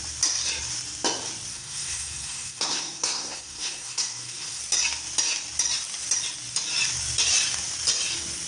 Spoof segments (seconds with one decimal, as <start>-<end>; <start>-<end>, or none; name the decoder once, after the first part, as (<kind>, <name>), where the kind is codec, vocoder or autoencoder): 1.5-4.6 (codec, SNAC)